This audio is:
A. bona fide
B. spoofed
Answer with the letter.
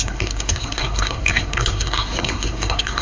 B